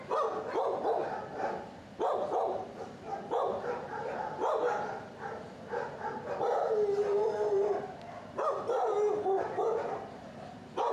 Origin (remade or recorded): recorded